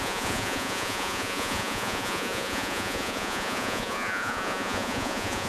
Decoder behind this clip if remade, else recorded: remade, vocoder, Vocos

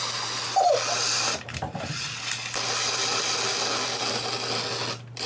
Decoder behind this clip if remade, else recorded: recorded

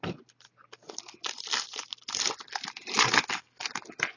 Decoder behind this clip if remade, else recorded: recorded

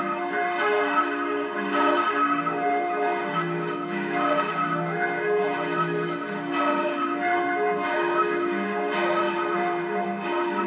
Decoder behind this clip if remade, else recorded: remade, autoencoder, DAC-VAE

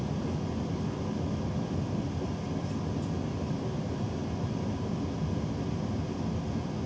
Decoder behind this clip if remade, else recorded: recorded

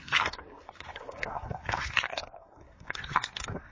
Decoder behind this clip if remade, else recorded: remade, codec, SNAC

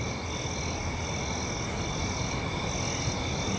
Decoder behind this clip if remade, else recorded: recorded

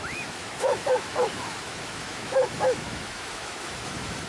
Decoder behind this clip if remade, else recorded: remade, autoencoder, DAC-VAE